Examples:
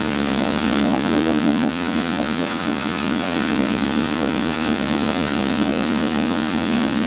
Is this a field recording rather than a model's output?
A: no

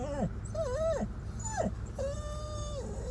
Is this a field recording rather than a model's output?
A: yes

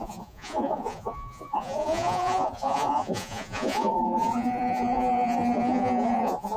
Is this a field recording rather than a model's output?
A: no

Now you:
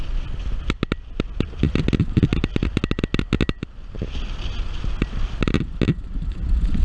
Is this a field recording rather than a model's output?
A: yes